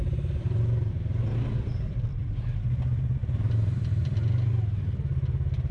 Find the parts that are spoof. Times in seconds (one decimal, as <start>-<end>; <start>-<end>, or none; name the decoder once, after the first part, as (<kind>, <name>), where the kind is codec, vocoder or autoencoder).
0.0-2.2 (vocoder, BigVGAN v2); 3.2-4.5